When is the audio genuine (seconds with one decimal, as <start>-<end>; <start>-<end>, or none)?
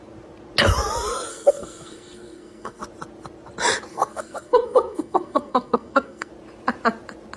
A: 0.0-1.3; 2.8-3.9; 6.3-7.4